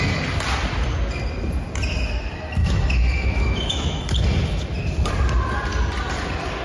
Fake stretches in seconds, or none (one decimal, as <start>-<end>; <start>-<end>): 2.6-4.0